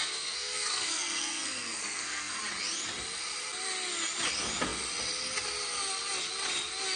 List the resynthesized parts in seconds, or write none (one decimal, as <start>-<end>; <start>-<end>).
0.0-2.4